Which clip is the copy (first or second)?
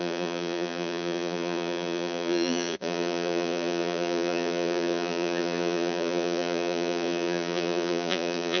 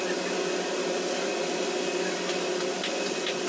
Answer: first